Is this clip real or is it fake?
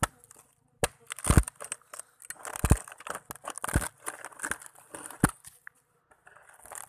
real